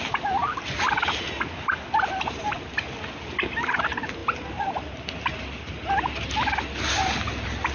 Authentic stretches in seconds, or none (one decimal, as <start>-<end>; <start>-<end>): 0.0-7.7